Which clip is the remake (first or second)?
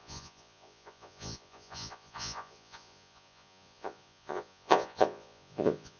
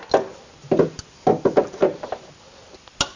first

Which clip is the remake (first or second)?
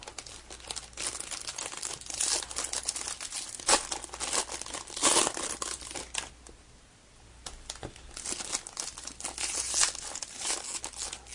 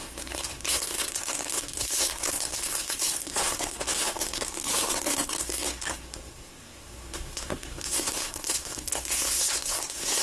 second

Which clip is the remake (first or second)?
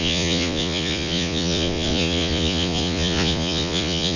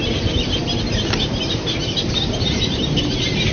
first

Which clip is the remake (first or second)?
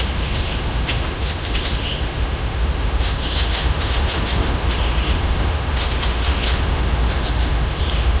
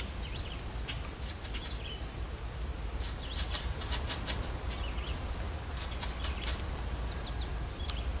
first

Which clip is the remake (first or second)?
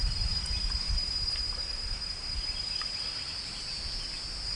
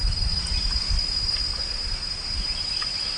first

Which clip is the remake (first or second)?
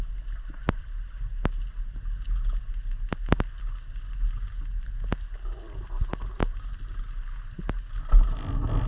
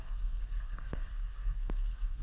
second